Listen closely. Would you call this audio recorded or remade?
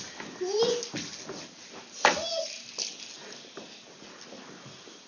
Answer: recorded